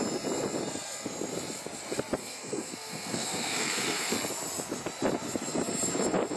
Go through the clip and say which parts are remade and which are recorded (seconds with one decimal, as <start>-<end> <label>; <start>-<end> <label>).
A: 0.0-2.2 recorded; 2.2-4.1 remade; 4.1-6.4 recorded